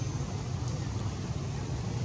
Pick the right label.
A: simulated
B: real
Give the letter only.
B